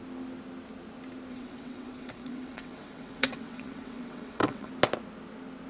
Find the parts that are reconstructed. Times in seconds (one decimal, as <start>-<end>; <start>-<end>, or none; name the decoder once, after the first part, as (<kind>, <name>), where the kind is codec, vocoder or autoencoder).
1.3-4.7 (vocoder, WaveNeXt)